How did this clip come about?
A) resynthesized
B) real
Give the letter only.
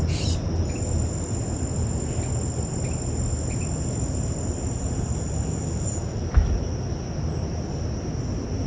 B